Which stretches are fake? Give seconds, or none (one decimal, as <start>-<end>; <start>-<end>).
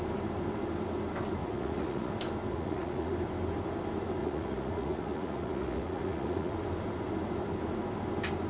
1.4-2.1; 2.5-3.1; 4.2-6.5